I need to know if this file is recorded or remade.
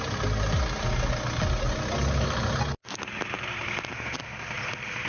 recorded